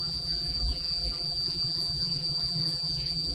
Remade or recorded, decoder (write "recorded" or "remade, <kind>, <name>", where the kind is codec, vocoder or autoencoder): remade, vocoder, BigVGAN v2